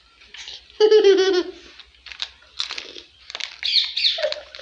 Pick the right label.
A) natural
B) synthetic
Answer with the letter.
A